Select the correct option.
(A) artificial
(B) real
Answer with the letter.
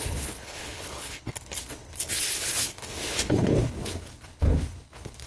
A